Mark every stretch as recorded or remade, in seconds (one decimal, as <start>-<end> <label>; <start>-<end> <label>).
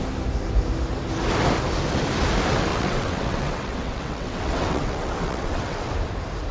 0.0-2.7 recorded; 2.7-5.9 remade; 5.9-6.5 recorded